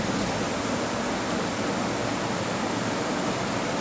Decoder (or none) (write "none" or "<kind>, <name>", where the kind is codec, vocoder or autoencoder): none